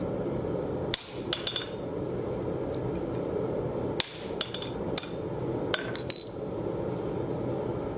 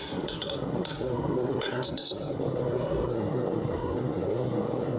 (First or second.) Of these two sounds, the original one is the first